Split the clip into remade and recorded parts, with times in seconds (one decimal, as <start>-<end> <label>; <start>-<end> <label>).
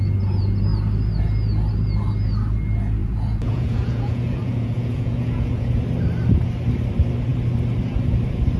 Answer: 0.0-3.0 recorded; 3.0-5.8 remade; 5.8-8.6 recorded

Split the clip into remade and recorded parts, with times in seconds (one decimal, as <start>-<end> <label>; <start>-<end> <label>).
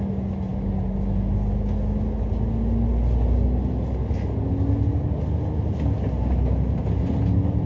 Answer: 0.0-7.7 recorded